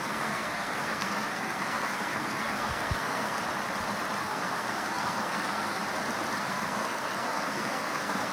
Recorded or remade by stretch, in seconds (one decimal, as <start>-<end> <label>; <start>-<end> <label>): 0.0-3.4 remade; 3.4-4.2 recorded; 4.2-5.8 remade; 5.8-6.4 recorded; 6.4-8.3 remade